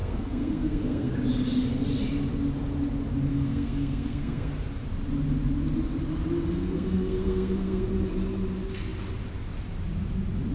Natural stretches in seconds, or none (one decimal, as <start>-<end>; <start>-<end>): 1.1-3.3; 4.5-6.6; 7.9-10.5